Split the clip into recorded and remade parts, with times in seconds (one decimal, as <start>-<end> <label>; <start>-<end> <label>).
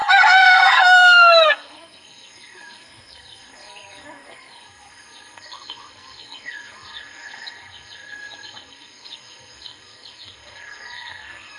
0.0-11.6 remade